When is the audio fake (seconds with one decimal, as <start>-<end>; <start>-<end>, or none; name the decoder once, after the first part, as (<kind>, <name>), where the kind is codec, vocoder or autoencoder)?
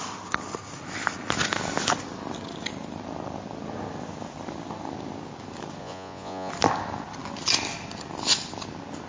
5.8-6.5 (vocoder, Vocos)